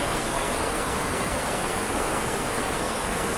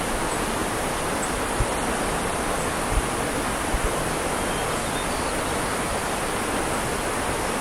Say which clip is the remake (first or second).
first